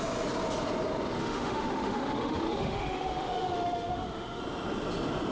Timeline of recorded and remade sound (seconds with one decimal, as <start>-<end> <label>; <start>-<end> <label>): 0.0-1.2 recorded; 1.2-4.4 remade; 4.4-5.3 recorded

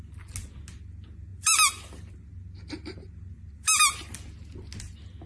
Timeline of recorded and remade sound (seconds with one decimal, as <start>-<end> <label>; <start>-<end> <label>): 0.0-5.3 recorded

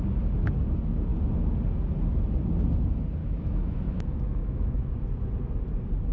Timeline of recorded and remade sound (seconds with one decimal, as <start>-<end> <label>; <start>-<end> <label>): 0.0-3.2 recorded; 3.2-4.9 remade; 4.9-6.1 recorded

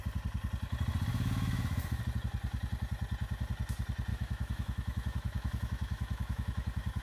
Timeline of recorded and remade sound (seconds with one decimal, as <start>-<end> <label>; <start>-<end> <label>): 0.0-1.1 recorded; 1.1-2.0 remade; 2.0-4.1 recorded; 4.1-7.0 remade

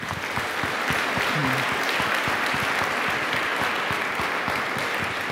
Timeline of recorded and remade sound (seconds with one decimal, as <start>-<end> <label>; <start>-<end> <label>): 0.0-5.3 recorded